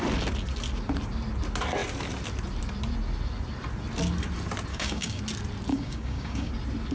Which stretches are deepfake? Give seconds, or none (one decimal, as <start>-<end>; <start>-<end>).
4.7-5.2; 5.7-6.5